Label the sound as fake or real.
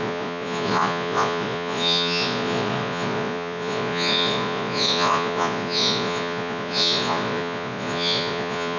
fake